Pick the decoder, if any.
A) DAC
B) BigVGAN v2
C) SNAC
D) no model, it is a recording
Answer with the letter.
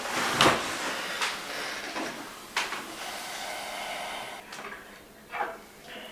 D